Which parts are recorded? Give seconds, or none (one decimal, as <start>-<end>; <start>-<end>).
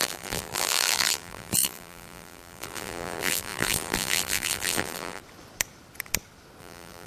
5.2-6.6